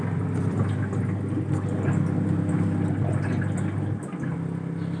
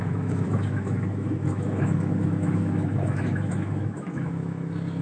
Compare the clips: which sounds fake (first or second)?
second